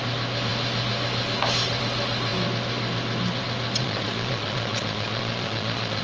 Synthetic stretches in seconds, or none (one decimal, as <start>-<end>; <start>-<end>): 3.8-6.0